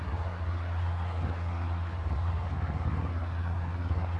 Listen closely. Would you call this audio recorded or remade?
remade